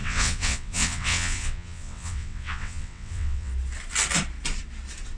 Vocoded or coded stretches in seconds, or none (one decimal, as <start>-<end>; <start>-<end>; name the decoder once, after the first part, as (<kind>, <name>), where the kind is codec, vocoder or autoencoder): 0.0-3.5 (vocoder, WaveNeXt)